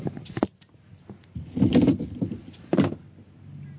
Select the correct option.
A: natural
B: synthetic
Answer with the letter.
A